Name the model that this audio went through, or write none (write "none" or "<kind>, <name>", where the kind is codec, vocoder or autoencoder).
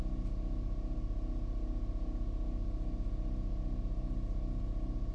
none